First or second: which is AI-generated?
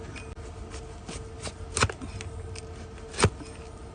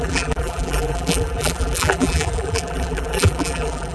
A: second